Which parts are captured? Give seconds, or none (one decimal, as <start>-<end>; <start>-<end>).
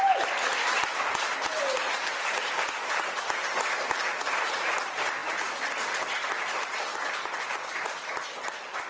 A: 0.0-8.9